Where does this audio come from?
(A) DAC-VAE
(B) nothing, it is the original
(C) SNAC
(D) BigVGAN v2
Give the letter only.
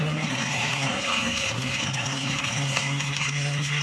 C